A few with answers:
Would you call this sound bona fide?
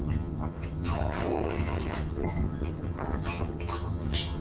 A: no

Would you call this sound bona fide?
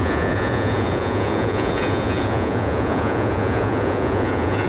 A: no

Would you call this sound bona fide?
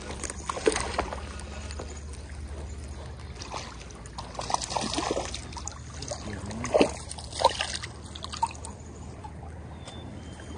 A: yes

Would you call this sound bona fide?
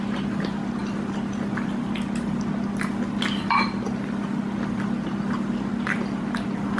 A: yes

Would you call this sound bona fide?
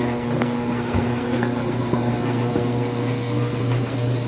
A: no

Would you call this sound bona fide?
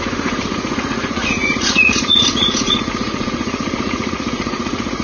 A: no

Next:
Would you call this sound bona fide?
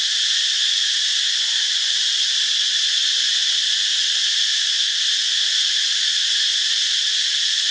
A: yes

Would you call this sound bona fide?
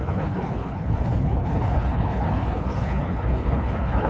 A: no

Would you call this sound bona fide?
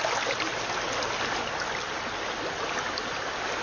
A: yes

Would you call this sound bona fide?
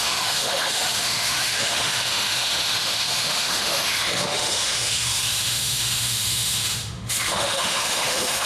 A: no